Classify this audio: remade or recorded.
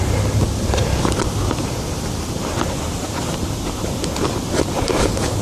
recorded